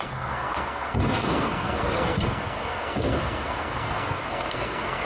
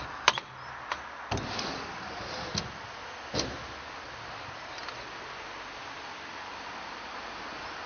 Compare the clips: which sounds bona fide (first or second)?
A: second